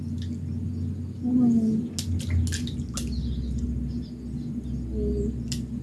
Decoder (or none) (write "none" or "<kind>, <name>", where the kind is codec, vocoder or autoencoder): none